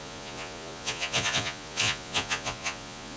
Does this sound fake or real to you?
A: fake